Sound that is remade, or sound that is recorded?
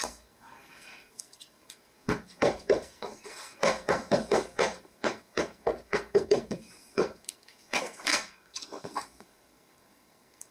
remade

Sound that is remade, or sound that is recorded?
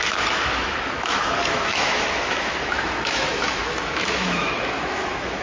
remade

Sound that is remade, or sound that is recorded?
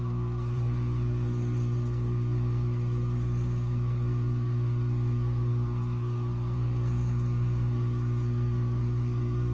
remade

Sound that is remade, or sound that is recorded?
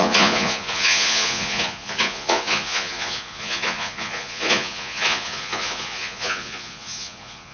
remade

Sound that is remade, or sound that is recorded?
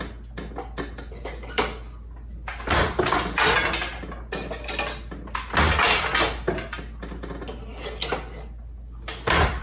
recorded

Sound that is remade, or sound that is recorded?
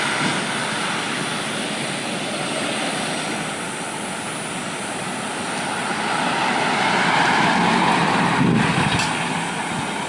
recorded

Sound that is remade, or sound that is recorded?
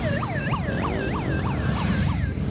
recorded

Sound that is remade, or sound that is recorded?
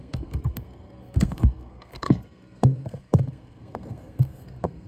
remade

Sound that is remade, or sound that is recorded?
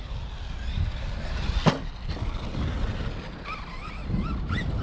recorded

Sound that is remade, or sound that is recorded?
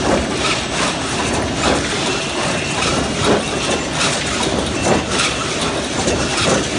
recorded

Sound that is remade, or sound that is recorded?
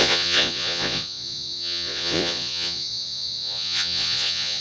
remade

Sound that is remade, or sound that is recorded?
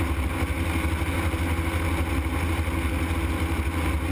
recorded